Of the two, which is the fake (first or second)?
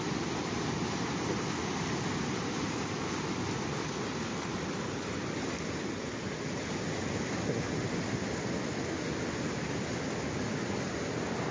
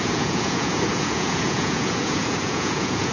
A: second